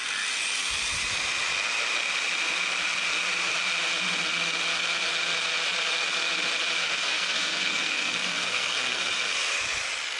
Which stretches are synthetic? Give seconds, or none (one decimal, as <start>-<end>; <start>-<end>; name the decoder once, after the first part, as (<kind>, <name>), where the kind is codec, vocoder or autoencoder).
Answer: 6.8-9.0 (codec, SNAC)